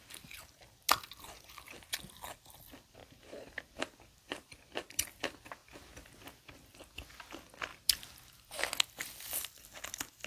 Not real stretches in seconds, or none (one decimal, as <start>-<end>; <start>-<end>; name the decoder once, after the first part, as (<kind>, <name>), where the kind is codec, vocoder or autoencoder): 0.0-1.0 (vocoder, BigVGAN v2); 3.0-4.6; 7.7-8.7